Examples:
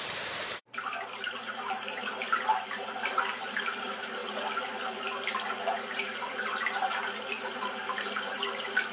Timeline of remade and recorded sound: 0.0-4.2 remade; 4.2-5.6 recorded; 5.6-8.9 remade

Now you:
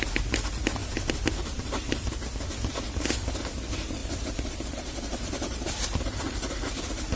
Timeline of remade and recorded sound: 0.0-0.8 recorded; 0.8-2.7 remade; 2.7-4.0 recorded; 4.0-7.2 remade

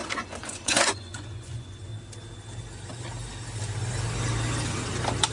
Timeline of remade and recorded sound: 0.0-1.9 remade; 1.9-5.3 recorded

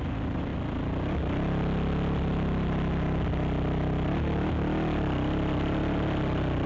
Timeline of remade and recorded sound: 0.0-6.7 recorded

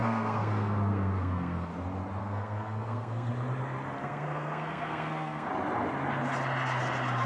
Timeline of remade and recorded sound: 0.0-1.7 remade; 1.7-2.2 recorded; 2.2-3.3 remade; 3.3-4.0 recorded; 4.0-5.5 remade; 5.5-7.3 recorded